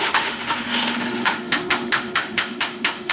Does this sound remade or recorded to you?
remade